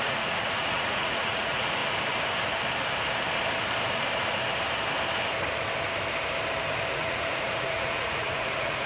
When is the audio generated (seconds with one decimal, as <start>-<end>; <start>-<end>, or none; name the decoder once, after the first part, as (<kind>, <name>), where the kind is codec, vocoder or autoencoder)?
0.0-1.8 (vocoder, Vocos); 6.9-8.9